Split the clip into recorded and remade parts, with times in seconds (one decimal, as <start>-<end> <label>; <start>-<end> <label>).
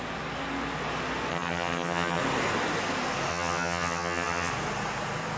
0.0-1.3 recorded; 1.3-2.2 remade; 2.2-3.3 recorded; 3.3-4.5 remade; 4.5-5.4 recorded